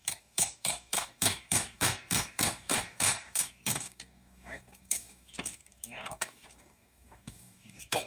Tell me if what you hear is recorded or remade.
remade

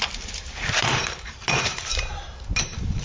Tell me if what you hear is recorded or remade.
remade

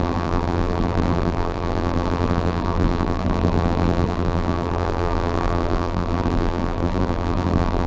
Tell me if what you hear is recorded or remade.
remade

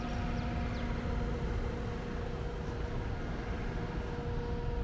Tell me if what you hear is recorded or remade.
recorded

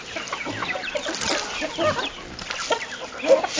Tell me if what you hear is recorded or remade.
recorded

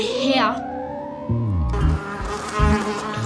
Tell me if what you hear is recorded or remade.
recorded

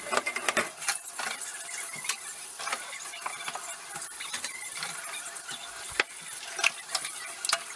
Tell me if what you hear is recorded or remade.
recorded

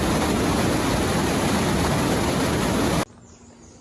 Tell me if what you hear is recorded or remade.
recorded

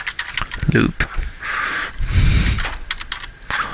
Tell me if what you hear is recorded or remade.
recorded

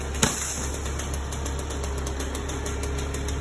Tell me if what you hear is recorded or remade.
recorded